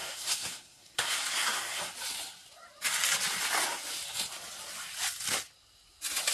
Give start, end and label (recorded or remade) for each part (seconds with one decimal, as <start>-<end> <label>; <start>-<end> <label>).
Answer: 0.0-1.8 remade; 1.8-6.3 recorded